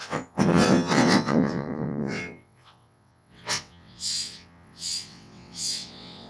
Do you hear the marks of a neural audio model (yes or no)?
yes